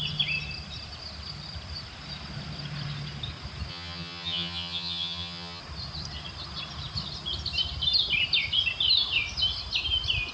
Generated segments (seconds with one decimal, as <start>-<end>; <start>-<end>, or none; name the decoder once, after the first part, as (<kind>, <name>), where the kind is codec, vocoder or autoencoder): 3.7-5.6 (vocoder, HiFi-GAN)